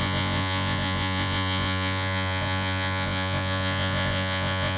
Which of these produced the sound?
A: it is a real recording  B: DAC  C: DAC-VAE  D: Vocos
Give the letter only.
D